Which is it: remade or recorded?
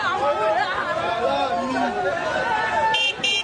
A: recorded